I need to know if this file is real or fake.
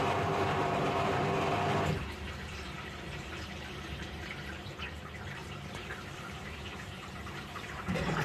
fake